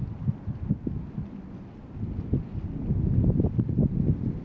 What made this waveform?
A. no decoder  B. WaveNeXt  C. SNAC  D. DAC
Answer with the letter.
A